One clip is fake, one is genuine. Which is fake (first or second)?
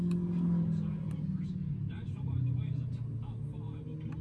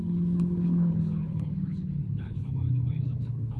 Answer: second